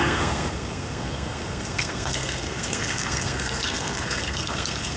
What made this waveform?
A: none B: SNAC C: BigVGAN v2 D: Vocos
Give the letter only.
B